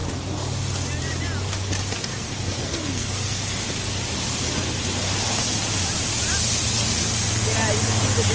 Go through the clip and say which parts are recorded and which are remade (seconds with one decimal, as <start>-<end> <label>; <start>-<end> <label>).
0.0-1.9 recorded; 1.9-3.6 remade; 3.6-8.3 recorded